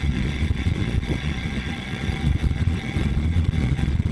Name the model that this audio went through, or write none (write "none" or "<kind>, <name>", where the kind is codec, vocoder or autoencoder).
vocoder, Vocos